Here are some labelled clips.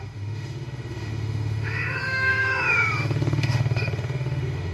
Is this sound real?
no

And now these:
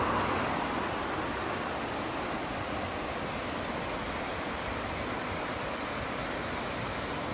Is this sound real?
yes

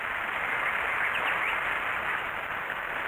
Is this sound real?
yes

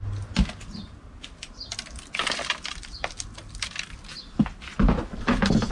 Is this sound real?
yes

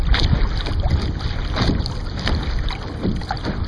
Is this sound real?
yes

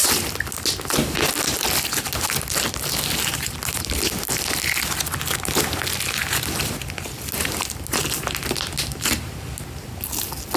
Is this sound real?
yes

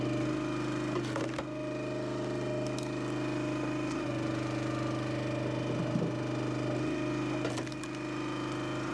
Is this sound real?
yes